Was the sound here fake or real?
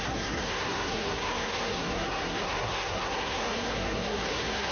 fake